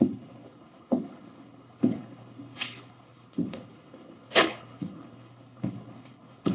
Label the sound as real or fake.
fake